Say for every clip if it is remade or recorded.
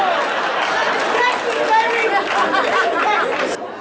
recorded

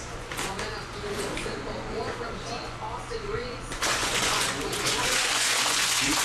remade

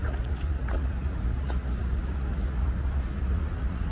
remade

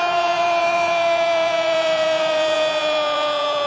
remade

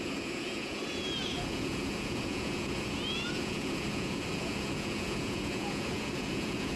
remade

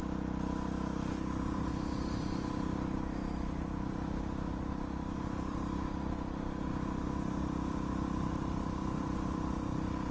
recorded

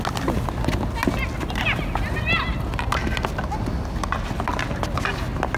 recorded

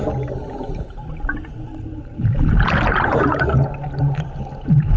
recorded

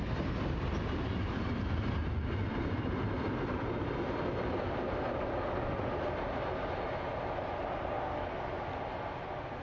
recorded